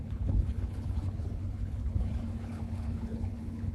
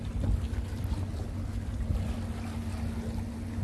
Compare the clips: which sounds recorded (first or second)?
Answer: second